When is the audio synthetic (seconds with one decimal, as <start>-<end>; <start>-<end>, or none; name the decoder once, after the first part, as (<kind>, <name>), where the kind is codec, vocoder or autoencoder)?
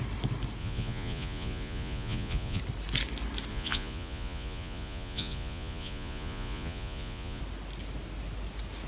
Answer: 0.6-2.6 (vocoder, Vocos); 3.5-7.4